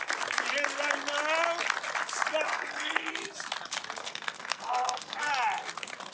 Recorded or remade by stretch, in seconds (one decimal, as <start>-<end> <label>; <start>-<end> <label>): 0.0-2.5 recorded; 2.5-3.1 remade; 3.1-4.0 recorded; 4.0-5.3 remade; 5.3-6.1 recorded